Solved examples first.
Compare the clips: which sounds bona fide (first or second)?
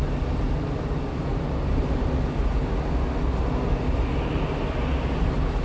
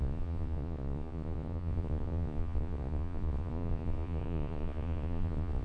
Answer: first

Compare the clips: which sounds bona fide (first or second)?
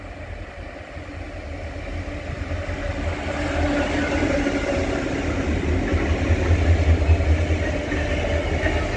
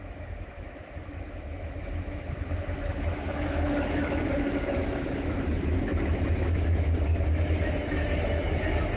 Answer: first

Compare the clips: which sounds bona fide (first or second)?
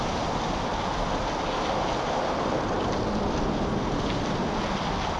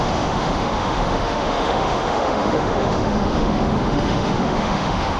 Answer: first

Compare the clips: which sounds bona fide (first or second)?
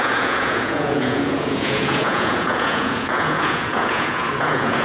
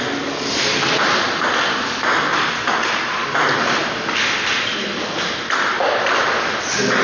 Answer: second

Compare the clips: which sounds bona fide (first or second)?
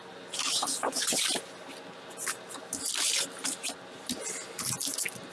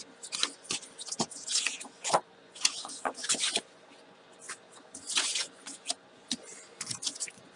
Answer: first